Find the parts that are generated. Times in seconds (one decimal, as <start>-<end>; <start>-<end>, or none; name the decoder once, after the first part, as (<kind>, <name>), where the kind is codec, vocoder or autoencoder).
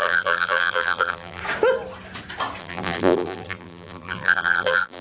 0.0-1.4 (vocoder, BigVGAN v2); 2.6-5.0